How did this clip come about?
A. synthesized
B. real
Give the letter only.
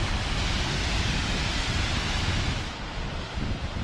B